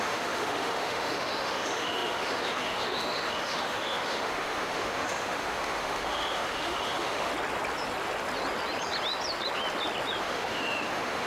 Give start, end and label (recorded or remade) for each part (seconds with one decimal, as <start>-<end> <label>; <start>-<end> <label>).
0.0-7.3 remade; 7.3-10.2 recorded; 10.2-11.3 remade